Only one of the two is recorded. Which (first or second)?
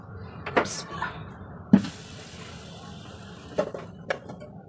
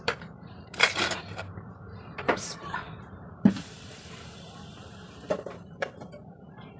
first